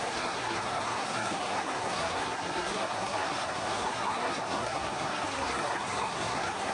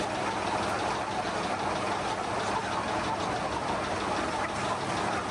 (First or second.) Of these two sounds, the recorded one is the second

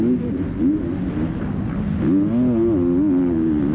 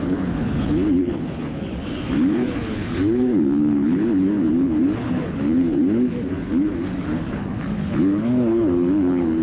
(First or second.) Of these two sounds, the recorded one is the first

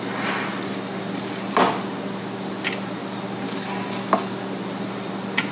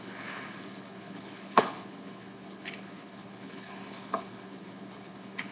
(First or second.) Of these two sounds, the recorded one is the first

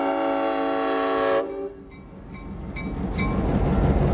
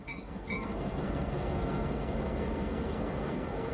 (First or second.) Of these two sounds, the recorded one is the first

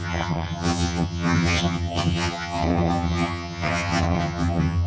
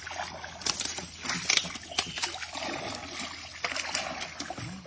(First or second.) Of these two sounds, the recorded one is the second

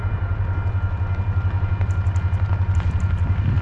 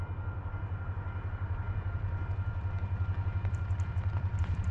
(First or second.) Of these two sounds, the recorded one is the first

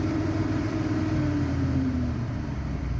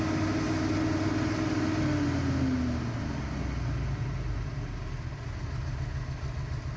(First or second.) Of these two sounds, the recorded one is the second